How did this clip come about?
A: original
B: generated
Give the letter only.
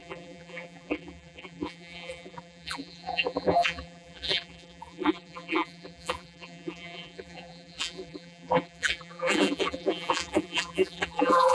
B